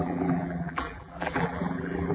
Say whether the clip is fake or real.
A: fake